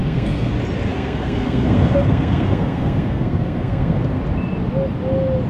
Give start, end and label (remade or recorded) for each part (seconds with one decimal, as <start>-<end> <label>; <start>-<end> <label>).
0.0-0.5 remade; 0.5-0.9 recorded; 0.9-4.2 remade; 4.2-5.5 recorded